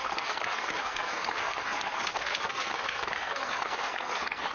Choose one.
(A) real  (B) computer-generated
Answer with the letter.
B